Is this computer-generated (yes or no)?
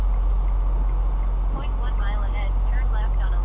no